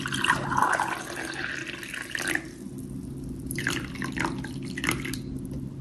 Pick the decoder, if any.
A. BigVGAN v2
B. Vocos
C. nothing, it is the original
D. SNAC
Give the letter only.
C